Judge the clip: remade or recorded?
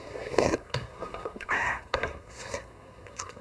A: remade